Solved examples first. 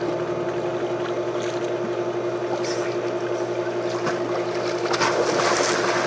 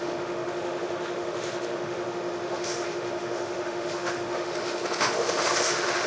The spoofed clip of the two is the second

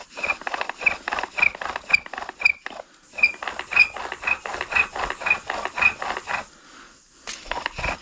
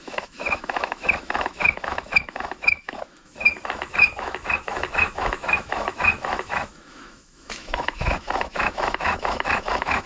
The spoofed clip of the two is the second